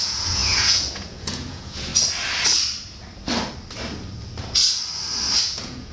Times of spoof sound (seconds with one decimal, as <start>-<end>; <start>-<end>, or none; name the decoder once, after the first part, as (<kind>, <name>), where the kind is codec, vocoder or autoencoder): 0.0-1.9 (vocoder, Vocos); 5.4-5.9